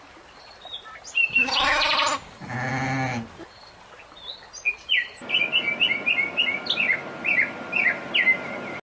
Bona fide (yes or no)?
yes